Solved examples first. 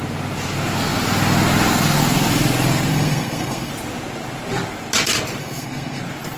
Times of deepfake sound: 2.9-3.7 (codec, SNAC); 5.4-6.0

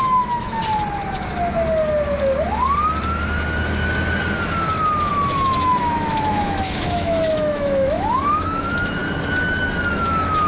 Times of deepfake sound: 0.0-0.6 (autoencoder, DAC-VAE); 5.1-9.0; 9.9-10.5